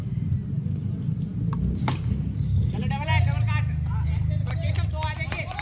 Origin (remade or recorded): recorded